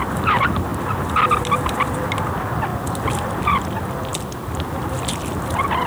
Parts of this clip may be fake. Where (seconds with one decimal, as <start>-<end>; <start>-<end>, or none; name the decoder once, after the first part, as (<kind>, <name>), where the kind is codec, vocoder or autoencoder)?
none